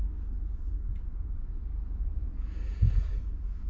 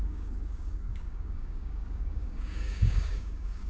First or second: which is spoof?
second